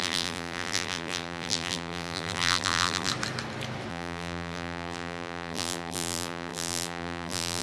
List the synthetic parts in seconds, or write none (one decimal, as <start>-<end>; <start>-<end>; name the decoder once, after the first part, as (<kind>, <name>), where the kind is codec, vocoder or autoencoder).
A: 0.0-3.1 (vocoder, BigVGAN v2); 3.9-7.6